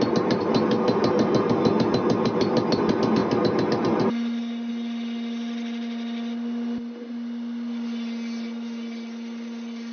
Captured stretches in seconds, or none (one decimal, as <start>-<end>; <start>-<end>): 0.0-9.9